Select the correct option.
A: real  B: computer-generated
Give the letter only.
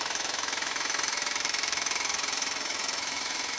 B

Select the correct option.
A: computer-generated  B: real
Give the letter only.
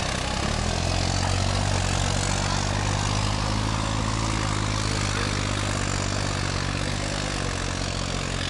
B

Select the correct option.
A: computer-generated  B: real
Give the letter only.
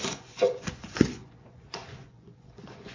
A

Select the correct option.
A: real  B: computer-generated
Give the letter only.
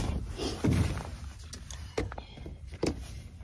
A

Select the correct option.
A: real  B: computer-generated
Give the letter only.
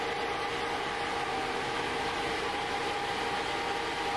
A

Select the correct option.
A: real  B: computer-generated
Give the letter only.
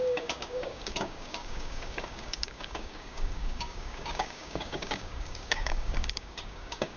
B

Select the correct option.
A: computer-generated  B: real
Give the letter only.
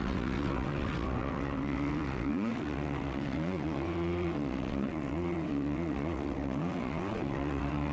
A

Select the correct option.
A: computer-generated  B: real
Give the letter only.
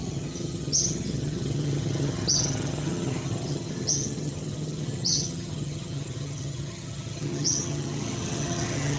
A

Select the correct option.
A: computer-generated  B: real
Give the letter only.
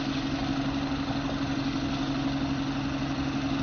B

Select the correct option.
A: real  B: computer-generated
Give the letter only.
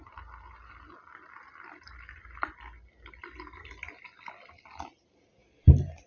A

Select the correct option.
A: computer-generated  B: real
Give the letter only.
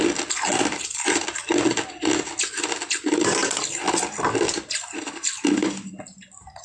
B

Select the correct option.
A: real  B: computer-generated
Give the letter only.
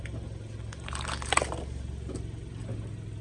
A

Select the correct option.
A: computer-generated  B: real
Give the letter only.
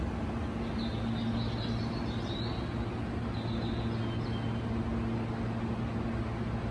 B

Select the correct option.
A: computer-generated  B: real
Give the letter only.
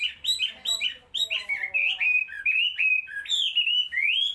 A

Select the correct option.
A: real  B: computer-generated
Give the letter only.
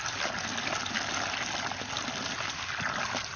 A